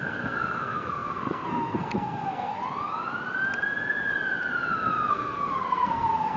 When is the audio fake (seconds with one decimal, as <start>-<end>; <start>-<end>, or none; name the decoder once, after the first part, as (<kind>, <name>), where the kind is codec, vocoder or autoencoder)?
0.0-2.6 (codec, SNAC); 5.1-6.4